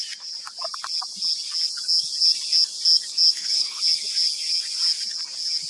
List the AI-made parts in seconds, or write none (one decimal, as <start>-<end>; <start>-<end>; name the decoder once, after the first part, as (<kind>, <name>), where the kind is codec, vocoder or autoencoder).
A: 3.3-3.8 (codec, HILCodec)